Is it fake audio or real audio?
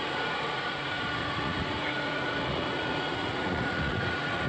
fake